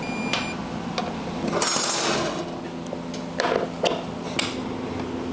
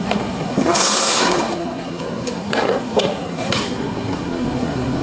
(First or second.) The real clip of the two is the first